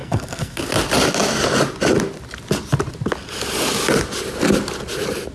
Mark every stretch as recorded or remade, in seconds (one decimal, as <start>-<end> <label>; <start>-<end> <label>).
0.0-0.6 remade; 0.6-5.3 recorded